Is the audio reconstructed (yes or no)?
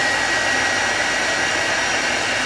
no